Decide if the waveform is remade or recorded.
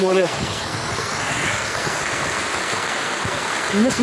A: remade